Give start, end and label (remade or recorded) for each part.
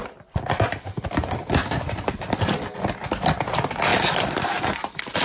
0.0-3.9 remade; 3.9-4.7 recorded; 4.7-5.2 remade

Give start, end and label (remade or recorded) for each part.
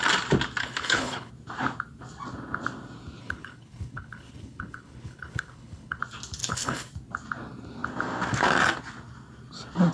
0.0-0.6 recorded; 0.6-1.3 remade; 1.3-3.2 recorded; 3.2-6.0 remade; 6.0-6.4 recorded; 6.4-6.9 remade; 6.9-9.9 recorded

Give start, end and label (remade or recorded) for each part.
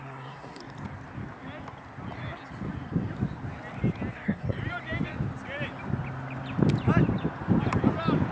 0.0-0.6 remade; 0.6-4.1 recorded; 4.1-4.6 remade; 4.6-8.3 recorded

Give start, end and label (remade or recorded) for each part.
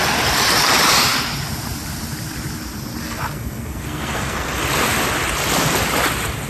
0.0-3.0 recorded; 3.0-4.5 remade; 4.5-6.5 recorded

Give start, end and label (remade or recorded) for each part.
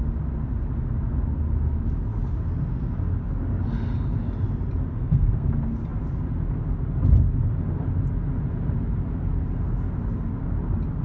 0.0-4.9 recorded; 4.9-5.5 remade; 5.5-11.0 recorded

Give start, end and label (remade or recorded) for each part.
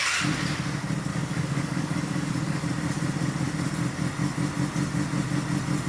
0.0-1.1 recorded; 1.1-2.6 remade; 2.6-5.9 recorded